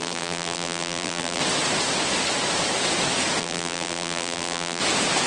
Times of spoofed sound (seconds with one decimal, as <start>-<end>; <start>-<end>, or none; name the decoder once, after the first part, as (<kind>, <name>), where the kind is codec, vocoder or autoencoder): 0.0-1.4 (vocoder, BigVGAN v2); 3.4-4.8